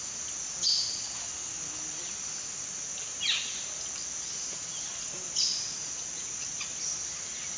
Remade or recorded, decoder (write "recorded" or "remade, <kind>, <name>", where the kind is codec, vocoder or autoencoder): recorded